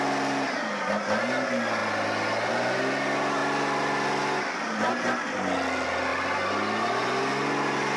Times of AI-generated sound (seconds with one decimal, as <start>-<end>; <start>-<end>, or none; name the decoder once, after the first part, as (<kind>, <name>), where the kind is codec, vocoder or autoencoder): none